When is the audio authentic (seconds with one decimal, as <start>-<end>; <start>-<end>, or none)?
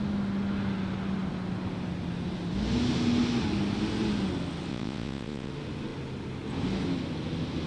0.0-4.7; 5.5-7.7